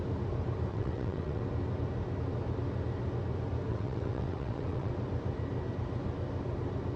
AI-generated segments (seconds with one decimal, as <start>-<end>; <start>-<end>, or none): 0.7-1.4; 3.7-4.9